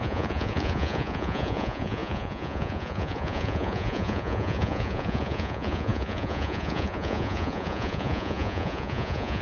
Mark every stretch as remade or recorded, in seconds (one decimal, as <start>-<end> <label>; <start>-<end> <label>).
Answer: 0.0-9.4 remade

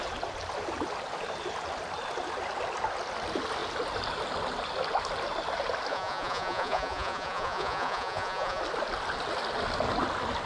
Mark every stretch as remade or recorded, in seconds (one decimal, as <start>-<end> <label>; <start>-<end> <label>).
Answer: 0.0-5.9 recorded; 5.9-8.6 remade; 8.6-10.5 recorded